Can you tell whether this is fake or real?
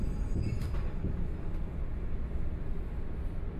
real